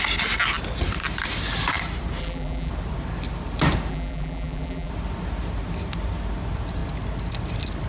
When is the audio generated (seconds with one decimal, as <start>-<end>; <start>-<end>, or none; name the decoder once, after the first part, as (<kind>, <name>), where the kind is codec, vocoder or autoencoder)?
2.2-2.7 (vocoder, BigVGAN v2); 3.9-4.9